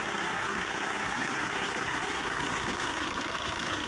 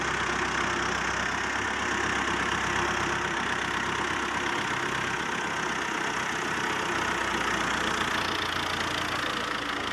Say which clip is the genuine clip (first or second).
second